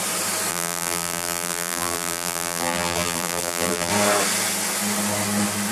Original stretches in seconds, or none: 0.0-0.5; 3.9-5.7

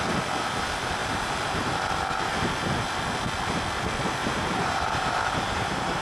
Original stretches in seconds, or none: 0.0-4.2

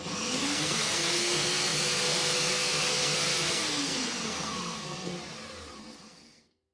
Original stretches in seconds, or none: 5.1-5.8